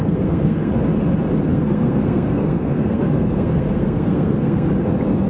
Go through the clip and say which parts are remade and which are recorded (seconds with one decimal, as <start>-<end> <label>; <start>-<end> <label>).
0.0-0.7 remade; 0.7-1.5 recorded; 1.5-4.7 remade; 4.7-5.3 recorded